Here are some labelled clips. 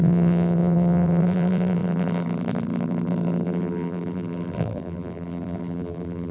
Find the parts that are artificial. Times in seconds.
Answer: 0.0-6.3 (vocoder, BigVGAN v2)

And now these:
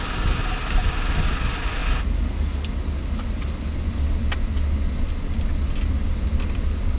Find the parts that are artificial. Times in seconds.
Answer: none

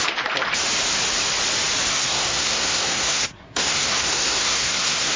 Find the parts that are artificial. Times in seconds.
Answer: 1.9-5.2 (codec, SNAC)

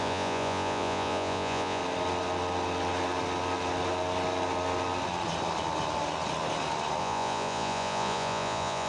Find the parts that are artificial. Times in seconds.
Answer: 0.0-1.8 (vocoder, Vocos); 7.0-8.9

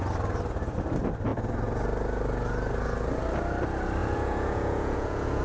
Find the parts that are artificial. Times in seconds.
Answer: 4.0-5.4 (vocoder, Vocos)